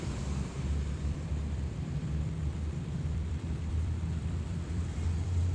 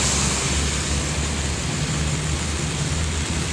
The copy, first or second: first